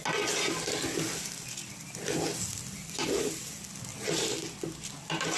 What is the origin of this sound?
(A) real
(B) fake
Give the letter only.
A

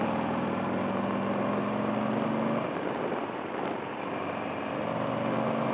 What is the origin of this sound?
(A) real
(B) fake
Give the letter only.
A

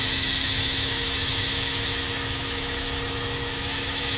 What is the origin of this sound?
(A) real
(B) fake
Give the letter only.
B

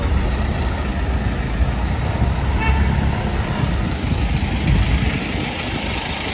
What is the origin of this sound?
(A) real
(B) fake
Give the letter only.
A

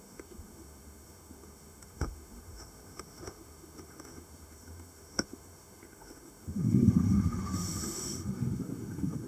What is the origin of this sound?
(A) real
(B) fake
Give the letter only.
B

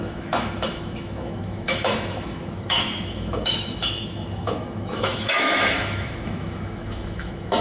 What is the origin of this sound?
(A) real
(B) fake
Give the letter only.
B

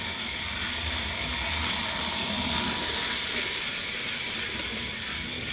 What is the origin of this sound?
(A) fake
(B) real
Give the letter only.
B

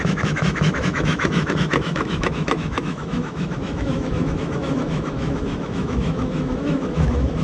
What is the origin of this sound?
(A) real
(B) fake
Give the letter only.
B